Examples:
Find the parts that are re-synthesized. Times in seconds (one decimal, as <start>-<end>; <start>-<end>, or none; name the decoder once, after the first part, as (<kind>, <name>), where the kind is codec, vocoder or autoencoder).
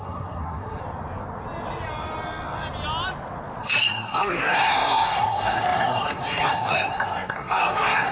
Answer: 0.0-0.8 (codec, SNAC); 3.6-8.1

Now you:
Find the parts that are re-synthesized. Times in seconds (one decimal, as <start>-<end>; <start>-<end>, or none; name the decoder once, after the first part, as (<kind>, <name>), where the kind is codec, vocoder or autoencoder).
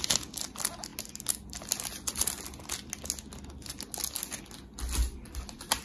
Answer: none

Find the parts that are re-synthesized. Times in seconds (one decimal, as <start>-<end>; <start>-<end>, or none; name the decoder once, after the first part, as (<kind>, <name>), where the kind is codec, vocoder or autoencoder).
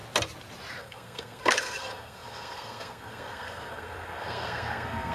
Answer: 0.8-5.1 (codec, SNAC)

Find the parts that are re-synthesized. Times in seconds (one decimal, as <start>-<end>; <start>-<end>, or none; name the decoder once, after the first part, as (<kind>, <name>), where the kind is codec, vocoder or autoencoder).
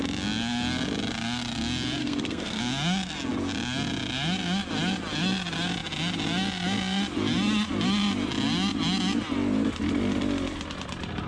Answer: 2.0-2.6 (codec, SNAC)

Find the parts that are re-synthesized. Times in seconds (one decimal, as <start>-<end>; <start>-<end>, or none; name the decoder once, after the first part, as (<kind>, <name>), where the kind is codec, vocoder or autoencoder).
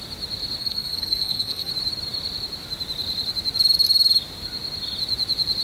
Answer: 0.6-1.7 (codec, SNAC)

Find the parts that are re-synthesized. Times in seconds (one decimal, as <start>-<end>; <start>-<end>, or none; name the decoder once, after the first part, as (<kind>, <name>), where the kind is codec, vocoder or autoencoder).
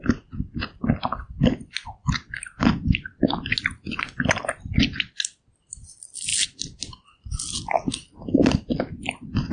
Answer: none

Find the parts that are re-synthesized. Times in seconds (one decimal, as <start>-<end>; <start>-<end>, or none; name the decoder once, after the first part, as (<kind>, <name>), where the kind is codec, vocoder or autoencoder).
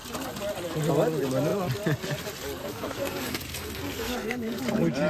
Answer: 2.6-4.6 (codec, SNAC)